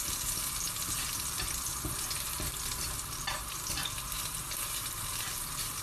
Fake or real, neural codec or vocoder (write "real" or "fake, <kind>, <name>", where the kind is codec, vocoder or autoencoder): real